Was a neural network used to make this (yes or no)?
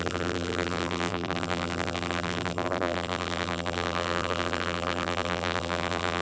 yes